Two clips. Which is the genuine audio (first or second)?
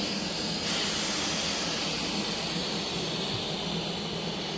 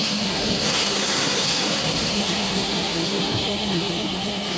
first